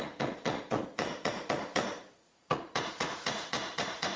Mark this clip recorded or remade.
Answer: remade